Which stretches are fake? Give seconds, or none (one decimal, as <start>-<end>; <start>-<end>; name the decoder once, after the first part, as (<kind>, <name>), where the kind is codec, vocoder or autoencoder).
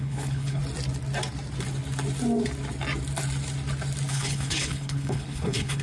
0.0-0.6 (codec, HILCodec); 4.1-5.8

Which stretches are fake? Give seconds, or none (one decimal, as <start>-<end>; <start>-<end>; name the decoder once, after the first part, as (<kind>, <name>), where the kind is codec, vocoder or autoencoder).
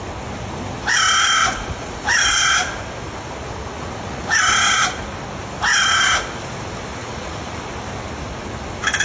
1.4-2.5 (vocoder, Vocos); 3.7-4.4; 7.0-7.6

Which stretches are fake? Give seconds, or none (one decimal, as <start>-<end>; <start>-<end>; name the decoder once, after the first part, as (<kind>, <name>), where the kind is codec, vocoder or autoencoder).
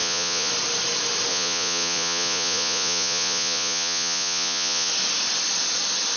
0.0-0.5 (vocoder, Vocos); 1.3-4.9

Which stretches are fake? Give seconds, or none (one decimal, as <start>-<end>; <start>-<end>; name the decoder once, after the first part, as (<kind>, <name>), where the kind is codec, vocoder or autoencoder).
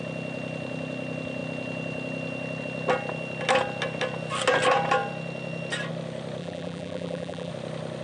6.4-7.5 (vocoder, BigVGAN v2)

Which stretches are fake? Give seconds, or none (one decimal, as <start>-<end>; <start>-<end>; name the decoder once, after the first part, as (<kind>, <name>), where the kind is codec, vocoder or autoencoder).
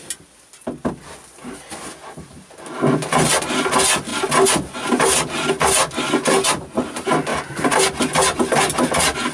none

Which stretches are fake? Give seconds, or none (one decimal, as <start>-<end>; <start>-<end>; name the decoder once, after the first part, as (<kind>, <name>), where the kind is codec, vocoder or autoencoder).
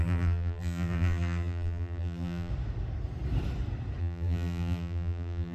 0.0-2.5 (vocoder, BigVGAN v2); 4.0-5.5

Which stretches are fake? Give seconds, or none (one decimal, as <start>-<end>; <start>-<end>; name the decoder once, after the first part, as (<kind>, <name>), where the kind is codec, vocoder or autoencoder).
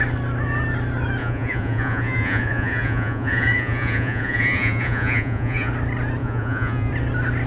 1.2-5.7 (vocoder, Vocos); 6.2-6.9